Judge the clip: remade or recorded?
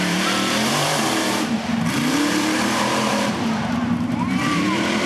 remade